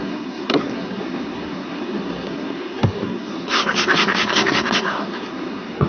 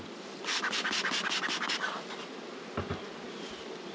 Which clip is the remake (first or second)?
first